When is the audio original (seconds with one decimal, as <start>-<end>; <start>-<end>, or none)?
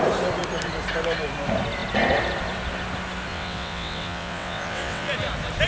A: 0.0-3.3; 5.1-5.7